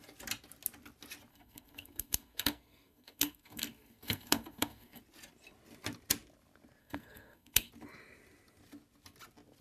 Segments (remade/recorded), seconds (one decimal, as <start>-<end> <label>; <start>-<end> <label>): 0.0-1.3 recorded; 1.3-5.0 remade; 5.0-6.8 recorded; 6.8-7.7 remade; 7.7-9.6 recorded